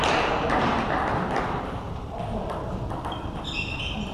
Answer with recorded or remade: recorded